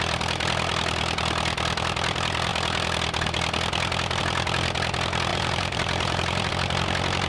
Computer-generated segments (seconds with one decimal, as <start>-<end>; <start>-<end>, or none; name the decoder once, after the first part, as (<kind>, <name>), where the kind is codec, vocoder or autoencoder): 5.3-6.5 (vocoder, BigVGAN v2)